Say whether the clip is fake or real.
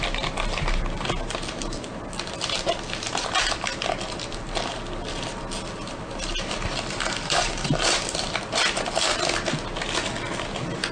real